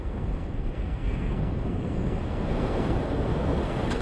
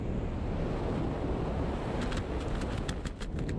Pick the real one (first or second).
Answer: second